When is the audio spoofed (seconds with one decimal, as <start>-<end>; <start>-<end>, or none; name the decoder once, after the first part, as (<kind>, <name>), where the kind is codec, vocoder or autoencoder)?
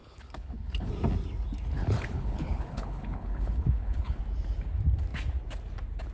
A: 0.0-0.9 (codec, HILCodec); 1.8-4.2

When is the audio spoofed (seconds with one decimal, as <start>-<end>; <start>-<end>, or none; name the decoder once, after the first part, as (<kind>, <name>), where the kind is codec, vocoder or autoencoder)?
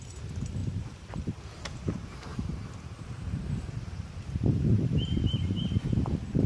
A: 0.6-1.3 (vocoder, BigVGAN v2); 2.3-6.0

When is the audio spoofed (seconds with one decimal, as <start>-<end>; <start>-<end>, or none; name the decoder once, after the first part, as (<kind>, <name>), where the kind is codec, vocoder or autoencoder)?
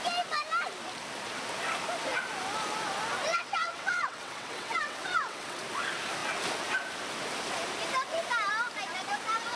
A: 3.3-5.6 (vocoder, WaveNeXt)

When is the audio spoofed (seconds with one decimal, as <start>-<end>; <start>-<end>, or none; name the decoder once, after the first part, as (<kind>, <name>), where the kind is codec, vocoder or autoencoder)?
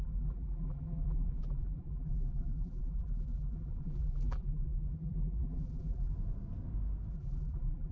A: 0.0-6.1 (vocoder, BigVGAN v2); 7.1-7.9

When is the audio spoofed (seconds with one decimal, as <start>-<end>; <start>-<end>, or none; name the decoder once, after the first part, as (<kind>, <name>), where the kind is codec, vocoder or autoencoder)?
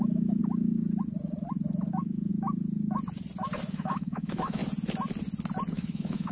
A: 0.0-0.4 (autoencoder, DAC-VAE); 1.9-2.3; 3.7-4.6; 5.7-6.3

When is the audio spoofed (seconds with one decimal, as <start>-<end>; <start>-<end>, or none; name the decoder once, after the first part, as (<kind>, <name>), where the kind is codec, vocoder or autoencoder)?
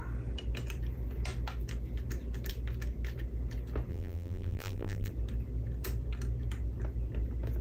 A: 3.9-5.1 (vocoder, BigVGAN v2)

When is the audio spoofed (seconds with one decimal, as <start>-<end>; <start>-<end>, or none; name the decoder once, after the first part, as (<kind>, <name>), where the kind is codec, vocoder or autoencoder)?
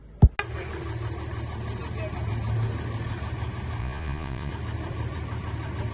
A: 3.8-4.5 (vocoder, Vocos)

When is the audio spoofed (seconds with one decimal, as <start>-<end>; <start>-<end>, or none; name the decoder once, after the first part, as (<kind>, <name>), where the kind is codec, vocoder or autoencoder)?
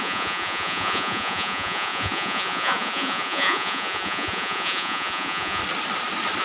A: 0.0-5.6 (vocoder, Vocos)